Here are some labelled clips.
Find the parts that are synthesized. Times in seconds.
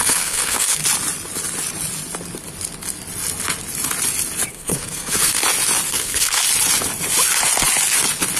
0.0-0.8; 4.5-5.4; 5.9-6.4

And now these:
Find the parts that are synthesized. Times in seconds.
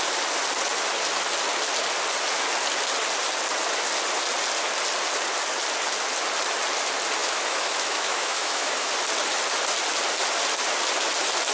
7.2-8.9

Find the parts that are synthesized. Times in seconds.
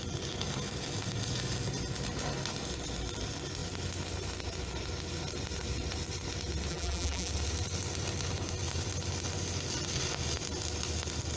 6.7-7.3